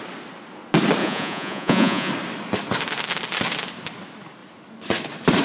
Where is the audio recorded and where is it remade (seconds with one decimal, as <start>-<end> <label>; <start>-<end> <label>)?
0.0-1.0 recorded; 1.0-2.1 remade; 2.1-5.4 recorded